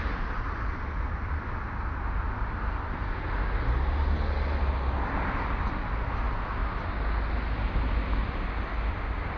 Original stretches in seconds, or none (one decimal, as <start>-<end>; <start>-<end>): 0.0-9.4